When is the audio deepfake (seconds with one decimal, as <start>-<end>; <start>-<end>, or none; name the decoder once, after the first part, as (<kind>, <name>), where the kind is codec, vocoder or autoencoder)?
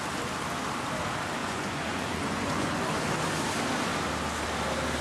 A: 1.4-2.9 (vocoder, Vocos)